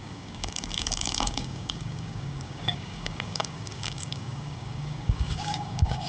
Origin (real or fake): fake